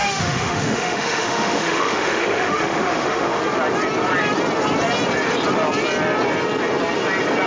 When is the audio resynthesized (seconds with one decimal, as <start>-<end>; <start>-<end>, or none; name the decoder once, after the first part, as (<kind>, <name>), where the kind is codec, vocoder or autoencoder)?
0.0-3.4 (autoencoder, DAC-VAE)